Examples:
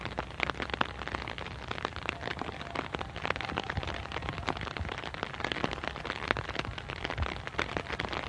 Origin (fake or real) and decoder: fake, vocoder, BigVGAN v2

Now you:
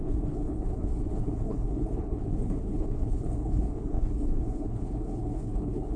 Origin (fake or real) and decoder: fake, codec, HILCodec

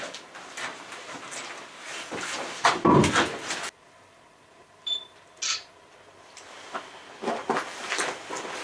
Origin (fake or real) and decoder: real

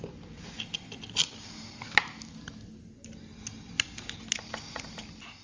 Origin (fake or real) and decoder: real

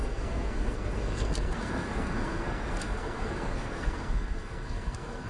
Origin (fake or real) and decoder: fake, codec, SNAC